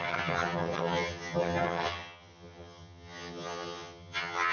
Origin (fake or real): fake